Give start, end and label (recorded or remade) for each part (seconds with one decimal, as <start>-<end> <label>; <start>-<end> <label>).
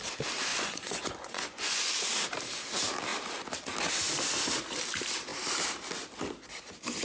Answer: 0.0-0.5 recorded; 0.5-1.9 remade; 1.9-7.0 recorded